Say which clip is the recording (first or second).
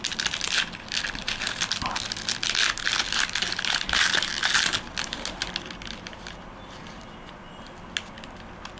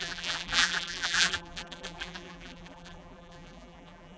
first